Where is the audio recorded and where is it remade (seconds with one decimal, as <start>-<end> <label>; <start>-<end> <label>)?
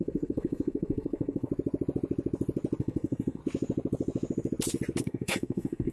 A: 0.0-1.5 remade; 1.5-2.8 recorded; 2.8-3.4 remade; 3.4-5.0 recorded; 5.0-5.9 remade